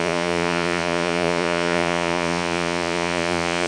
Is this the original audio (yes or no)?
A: no